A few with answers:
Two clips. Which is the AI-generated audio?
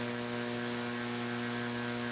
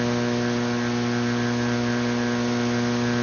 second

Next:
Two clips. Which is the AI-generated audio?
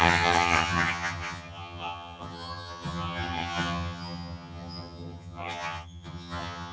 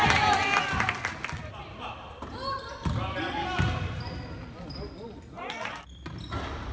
first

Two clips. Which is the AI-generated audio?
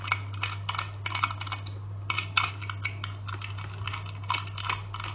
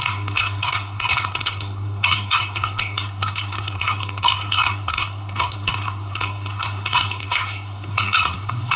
second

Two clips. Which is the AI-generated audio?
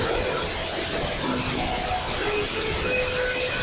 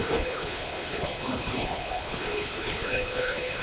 second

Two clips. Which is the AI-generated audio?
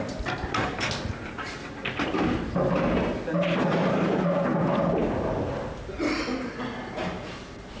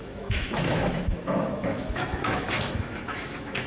second